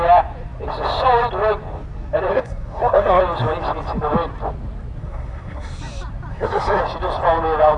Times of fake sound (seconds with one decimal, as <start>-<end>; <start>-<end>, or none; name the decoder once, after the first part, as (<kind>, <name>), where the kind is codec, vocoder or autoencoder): 2.3-3.2 (codec, SNAC); 5.0-5.8; 6.3-6.8